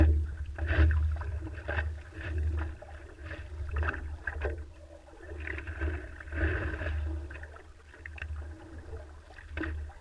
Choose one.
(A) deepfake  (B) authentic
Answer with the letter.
B